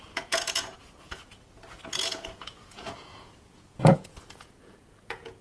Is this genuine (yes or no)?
no